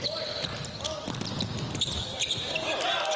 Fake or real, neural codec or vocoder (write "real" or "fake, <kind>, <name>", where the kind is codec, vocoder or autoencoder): real